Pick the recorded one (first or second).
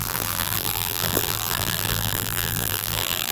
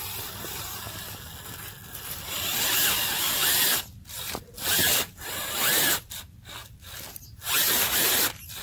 second